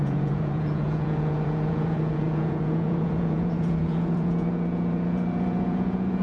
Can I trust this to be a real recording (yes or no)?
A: no